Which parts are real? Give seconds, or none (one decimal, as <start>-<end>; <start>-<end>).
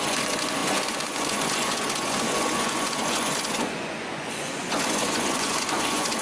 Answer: none